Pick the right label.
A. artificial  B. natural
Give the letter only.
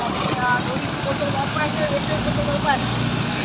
B